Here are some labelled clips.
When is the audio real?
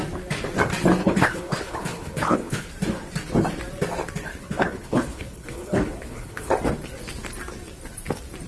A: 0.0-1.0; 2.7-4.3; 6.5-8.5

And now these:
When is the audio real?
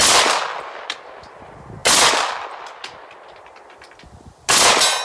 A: 0.0-5.0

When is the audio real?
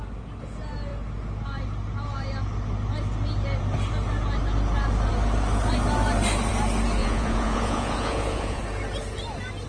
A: 0.0-7.0; 8.6-9.7